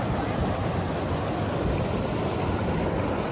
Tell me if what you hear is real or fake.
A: real